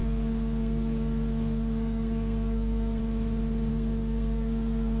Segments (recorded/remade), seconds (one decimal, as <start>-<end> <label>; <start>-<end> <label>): 0.0-3.0 remade; 3.0-3.7 recorded; 3.7-5.0 remade